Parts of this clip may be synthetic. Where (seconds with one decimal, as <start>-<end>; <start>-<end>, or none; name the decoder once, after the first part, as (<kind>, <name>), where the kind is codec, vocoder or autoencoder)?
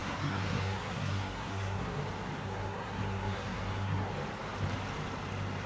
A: 0.0-2.0 (codec, SNAC); 2.4-4.1